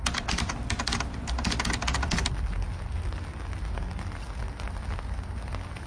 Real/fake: real